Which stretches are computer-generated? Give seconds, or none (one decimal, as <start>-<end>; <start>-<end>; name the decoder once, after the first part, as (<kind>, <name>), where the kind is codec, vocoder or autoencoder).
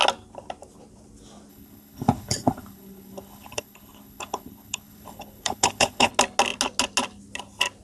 1.5-6.1 (codec, HILCodec)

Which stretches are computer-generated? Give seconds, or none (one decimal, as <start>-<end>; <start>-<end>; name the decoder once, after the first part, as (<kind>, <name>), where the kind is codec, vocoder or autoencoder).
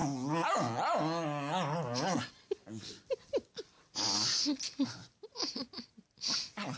none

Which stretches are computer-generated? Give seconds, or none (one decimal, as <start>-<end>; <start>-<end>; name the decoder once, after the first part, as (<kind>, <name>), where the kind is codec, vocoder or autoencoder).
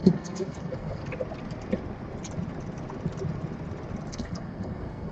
0.0-1.0 (codec, SNAC); 4.1-5.1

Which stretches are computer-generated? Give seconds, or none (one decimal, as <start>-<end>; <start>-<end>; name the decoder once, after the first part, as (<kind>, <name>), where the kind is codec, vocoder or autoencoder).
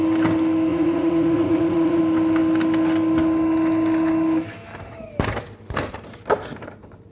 0.7-2.0 (vocoder, Vocos)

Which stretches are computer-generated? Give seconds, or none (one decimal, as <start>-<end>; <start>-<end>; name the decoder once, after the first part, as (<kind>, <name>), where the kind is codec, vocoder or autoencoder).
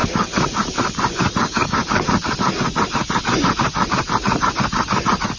none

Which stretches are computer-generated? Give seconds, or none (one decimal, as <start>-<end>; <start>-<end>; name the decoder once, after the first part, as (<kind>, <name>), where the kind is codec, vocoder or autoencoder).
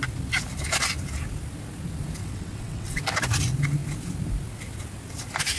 2.2-3.0 (vocoder, WaveNeXt)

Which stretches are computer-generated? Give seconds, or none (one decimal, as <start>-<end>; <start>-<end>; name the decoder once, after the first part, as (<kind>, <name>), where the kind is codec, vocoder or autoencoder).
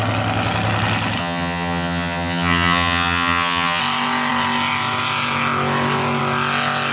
1.2-3.8 (vocoder, HiFi-GAN)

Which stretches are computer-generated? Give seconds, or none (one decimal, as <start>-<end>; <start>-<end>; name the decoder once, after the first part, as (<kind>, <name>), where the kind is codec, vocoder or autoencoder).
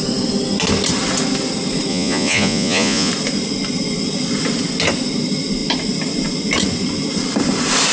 1.9-3.1 (vocoder, Vocos)